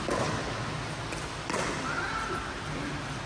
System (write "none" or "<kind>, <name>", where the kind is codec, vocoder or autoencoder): vocoder, BigVGAN v2